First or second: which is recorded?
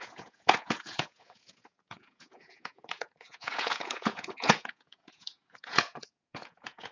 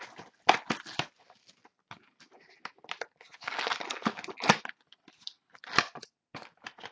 second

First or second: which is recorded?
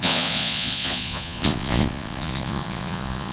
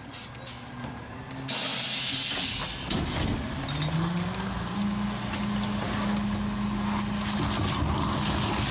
second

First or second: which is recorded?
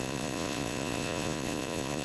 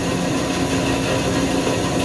second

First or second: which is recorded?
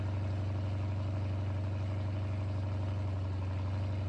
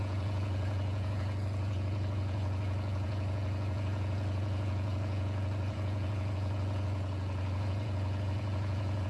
first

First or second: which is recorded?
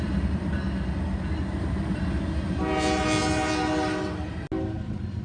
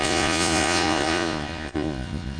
first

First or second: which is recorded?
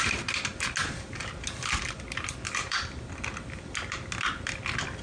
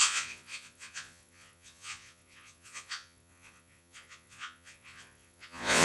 first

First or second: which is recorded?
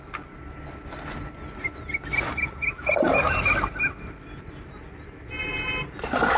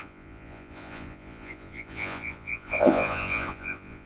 first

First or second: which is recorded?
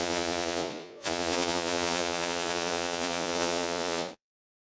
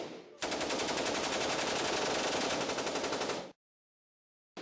second